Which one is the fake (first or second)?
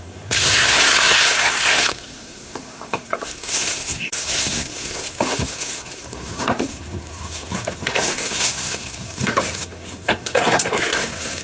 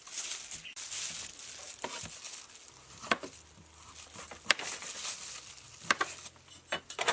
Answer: first